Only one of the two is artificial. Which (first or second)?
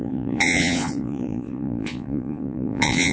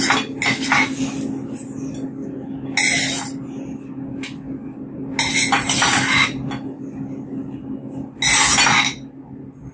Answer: first